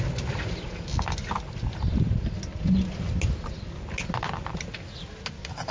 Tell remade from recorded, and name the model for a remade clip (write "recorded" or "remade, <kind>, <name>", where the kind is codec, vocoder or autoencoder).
recorded